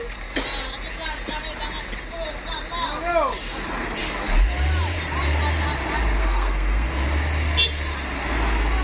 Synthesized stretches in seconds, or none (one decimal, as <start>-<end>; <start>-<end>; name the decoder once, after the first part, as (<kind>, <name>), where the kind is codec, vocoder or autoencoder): 6.2-6.9 (codec, SNAC)